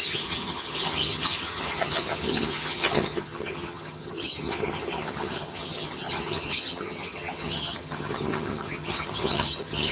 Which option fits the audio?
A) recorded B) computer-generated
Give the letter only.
B